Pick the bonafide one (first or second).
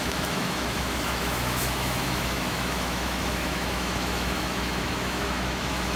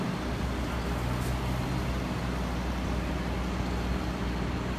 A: second